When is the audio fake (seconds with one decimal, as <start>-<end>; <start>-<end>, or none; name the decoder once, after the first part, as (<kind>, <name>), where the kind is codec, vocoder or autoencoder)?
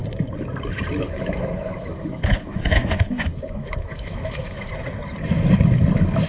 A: 1.0-4.7 (autoencoder, DAC-VAE)